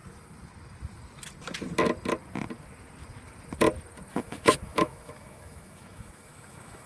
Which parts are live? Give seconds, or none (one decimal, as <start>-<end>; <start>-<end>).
0.0-4.1